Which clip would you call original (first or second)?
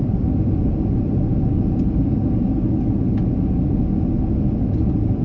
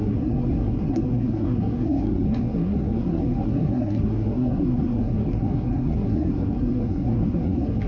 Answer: first